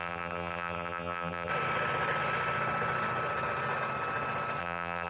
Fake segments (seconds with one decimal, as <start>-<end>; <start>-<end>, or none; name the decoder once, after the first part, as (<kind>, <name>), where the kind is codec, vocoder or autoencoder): 0.0-1.5 (vocoder, BigVGAN v2); 4.6-5.1